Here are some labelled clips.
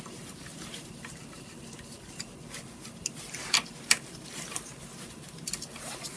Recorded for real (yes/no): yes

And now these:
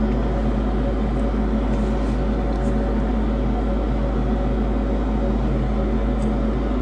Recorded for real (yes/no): yes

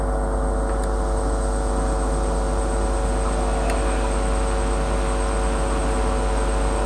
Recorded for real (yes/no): yes